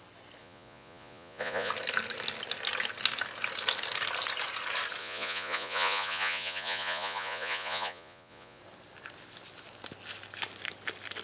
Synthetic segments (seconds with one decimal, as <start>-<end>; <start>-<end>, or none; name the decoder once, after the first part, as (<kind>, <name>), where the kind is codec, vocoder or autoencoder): 0.4-1.7 (vocoder, Vocos); 5.0-8.6